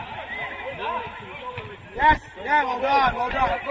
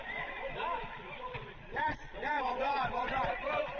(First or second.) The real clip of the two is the first